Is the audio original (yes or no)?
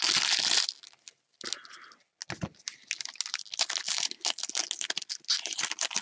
yes